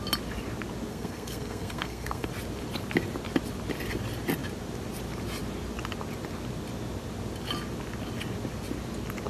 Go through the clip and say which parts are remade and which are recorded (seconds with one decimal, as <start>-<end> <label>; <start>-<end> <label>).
0.0-0.9 recorded; 0.9-2.3 remade; 2.3-9.3 recorded